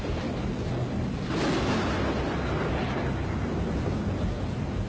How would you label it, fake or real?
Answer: real